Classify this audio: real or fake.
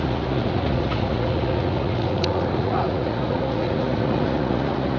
fake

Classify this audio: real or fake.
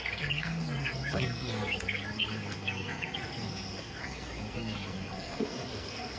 fake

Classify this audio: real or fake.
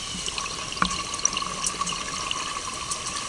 real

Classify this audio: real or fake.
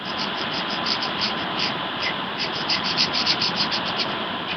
fake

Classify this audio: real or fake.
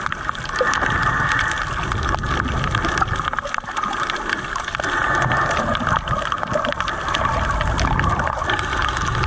real